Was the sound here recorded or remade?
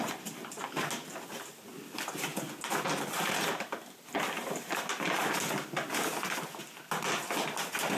recorded